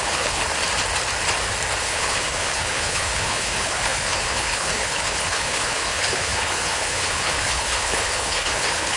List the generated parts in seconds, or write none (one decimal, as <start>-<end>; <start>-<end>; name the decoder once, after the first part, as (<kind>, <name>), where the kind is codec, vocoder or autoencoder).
0.0-0.4 (codec, HILCodec); 1.8-9.0